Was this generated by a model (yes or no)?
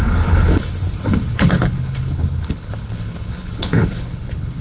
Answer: yes